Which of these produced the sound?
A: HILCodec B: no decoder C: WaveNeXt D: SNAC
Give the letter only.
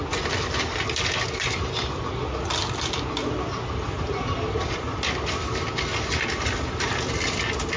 B